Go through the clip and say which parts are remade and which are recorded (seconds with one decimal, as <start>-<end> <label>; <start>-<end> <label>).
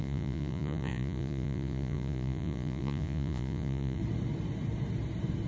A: 0.0-4.0 remade; 4.0-5.5 recorded